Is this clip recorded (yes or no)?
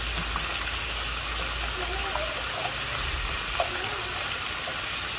yes